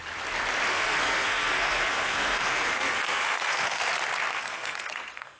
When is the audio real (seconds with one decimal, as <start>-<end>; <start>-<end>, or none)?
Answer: 0.0-0.7; 3.9-4.3